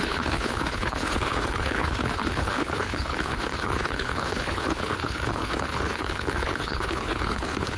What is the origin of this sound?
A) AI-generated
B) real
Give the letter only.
A